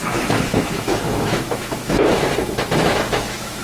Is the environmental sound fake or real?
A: fake